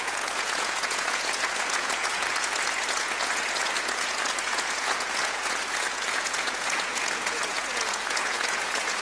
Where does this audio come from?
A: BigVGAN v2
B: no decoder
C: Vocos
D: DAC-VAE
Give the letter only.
C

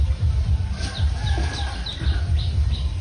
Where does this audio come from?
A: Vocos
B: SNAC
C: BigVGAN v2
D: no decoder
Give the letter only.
D